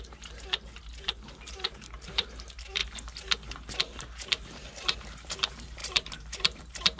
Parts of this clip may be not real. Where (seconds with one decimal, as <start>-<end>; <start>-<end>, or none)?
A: 0.0-2.8; 3.8-7.0